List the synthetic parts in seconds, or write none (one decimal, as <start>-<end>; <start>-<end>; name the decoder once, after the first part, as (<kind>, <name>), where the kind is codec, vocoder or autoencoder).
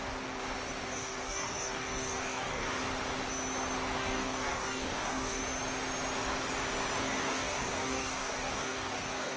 0.9-2.8 (codec, DAC); 4.0-5.4; 7.0-9.4